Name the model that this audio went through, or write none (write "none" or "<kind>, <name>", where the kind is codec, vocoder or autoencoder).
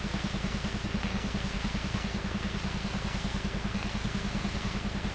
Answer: codec, SNAC